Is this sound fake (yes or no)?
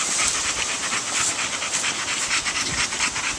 no